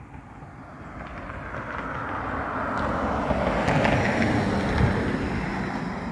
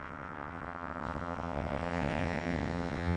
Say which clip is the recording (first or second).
first